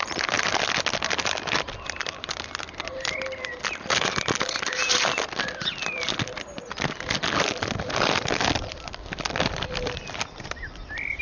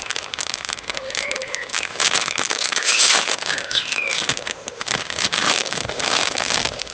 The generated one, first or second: second